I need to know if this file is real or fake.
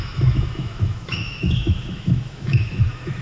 fake